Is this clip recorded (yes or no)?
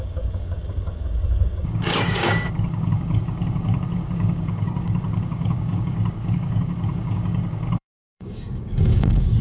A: no